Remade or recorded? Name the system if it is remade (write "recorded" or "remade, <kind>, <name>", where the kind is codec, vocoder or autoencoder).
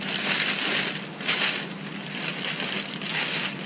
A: recorded